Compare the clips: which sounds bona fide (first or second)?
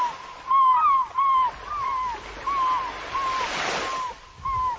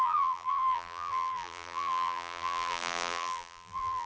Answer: first